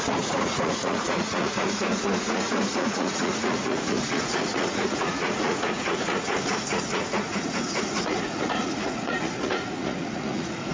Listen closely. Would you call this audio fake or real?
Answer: fake